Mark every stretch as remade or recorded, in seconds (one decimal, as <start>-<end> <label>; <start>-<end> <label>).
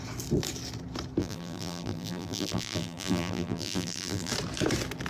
0.0-1.2 recorded; 1.2-4.3 remade; 4.3-5.1 recorded